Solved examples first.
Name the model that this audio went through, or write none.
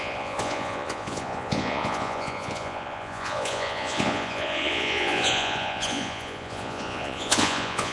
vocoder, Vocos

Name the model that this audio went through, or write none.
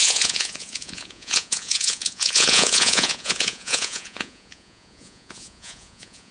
vocoder, Vocos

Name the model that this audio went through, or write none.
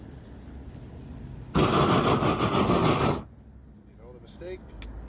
none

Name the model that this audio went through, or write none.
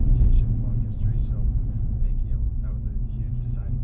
none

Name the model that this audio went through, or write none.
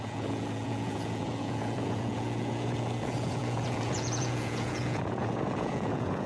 vocoder, Vocos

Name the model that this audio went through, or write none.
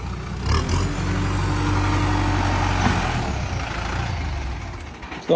none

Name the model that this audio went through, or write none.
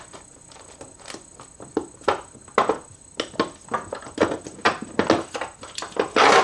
none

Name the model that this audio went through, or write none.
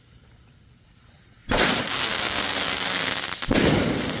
none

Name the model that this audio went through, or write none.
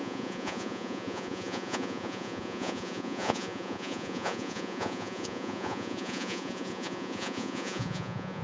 vocoder, Vocos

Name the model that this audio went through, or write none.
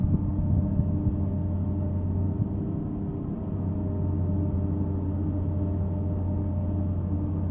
none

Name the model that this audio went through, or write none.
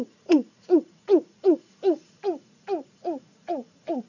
vocoder, Vocos